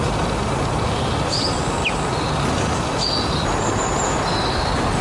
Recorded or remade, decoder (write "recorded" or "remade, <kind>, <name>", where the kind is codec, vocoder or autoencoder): recorded